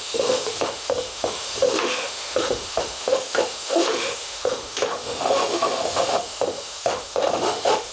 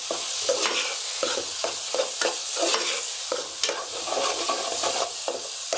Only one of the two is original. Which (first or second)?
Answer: second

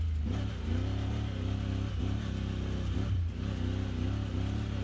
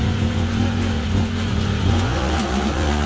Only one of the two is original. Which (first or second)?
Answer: first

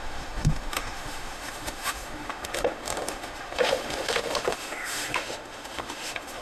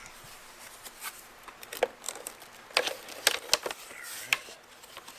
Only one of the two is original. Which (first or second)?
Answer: second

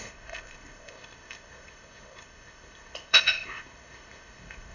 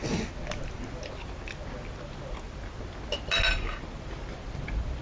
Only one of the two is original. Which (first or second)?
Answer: second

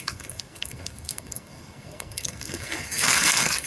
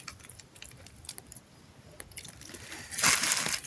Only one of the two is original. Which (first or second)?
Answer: second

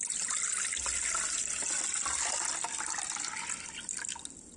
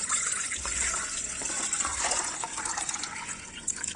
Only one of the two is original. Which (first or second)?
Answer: first